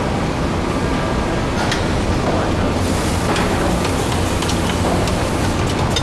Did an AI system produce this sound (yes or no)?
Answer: no